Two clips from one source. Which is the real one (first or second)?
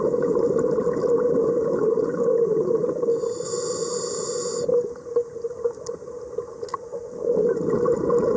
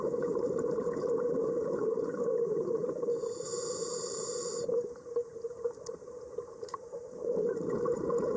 first